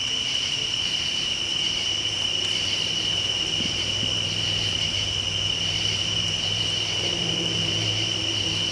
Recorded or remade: remade